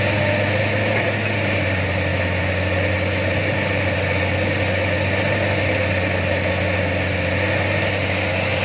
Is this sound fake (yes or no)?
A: no